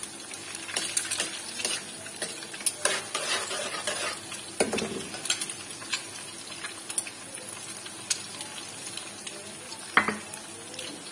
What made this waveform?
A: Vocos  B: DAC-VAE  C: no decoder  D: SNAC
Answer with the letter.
C